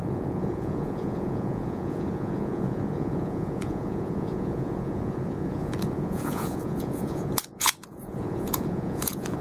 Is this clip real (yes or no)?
no